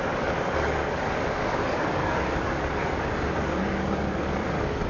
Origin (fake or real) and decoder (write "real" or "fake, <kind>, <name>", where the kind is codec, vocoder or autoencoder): fake, codec, DAC